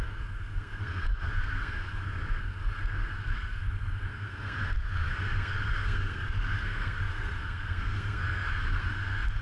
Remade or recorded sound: remade